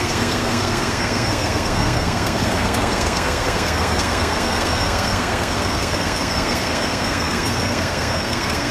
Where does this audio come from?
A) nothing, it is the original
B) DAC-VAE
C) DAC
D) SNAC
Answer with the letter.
D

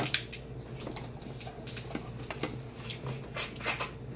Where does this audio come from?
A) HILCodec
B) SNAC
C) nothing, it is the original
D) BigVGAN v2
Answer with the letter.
C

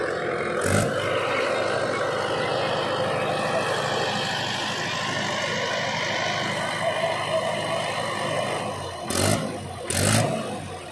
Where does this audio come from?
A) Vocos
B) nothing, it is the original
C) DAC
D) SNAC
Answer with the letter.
B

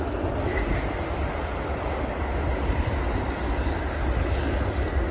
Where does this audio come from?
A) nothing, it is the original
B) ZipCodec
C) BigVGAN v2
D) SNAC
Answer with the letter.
A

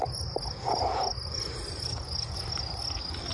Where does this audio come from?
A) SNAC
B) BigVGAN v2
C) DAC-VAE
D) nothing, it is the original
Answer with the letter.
D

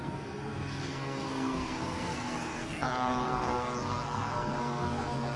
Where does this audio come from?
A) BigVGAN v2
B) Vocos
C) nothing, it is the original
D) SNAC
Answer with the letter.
D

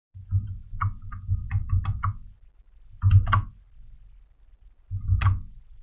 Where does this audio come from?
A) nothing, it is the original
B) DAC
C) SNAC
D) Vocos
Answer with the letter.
A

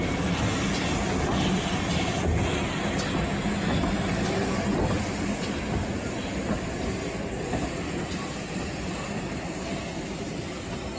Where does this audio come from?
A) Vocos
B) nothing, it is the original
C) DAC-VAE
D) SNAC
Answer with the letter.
B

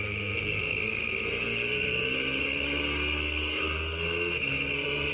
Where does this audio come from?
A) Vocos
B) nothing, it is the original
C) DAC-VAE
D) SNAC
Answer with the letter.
D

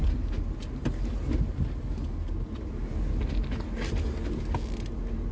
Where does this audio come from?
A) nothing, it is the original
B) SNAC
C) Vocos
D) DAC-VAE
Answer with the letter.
A